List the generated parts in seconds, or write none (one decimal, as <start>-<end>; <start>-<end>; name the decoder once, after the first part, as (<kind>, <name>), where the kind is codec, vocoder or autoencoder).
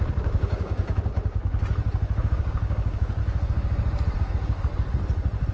0.0-1.1 (codec, DAC); 2.2-3.2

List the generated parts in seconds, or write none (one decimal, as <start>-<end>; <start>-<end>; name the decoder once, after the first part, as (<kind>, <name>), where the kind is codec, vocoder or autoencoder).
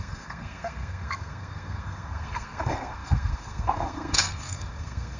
0.0-5.2 (codec, SNAC)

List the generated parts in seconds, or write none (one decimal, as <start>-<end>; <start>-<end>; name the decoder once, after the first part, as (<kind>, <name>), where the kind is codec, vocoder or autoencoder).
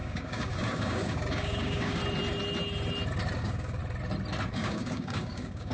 0.0-2.0 (codec, DAC); 3.4-3.8; 4.5-5.7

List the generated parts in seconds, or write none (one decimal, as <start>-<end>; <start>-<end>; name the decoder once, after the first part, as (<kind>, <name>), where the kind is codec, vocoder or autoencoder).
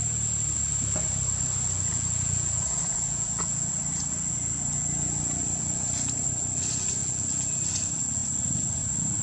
1.9-3.7 (vocoder, Vocos); 7.0-7.5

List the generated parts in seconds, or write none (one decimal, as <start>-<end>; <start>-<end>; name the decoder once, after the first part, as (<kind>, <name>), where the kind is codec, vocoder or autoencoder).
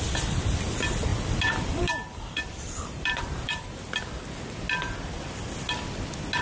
1.1-3.6 (vocoder, BigVGAN v2)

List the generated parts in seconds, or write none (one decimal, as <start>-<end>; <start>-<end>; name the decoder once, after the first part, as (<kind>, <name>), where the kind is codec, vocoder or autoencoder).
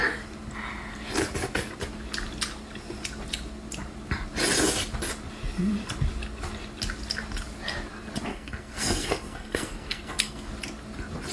8.3-10.5 (codec, SNAC)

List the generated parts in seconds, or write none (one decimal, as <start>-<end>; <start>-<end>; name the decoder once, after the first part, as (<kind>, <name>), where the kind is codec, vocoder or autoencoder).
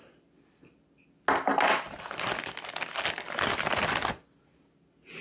none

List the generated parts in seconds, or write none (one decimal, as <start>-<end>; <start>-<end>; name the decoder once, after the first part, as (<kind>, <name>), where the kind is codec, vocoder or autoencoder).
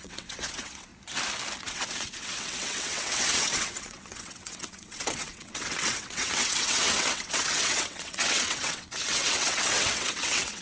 0.0-0.9 (vocoder, WaveNeXt); 1.6-10.6